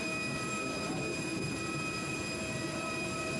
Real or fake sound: fake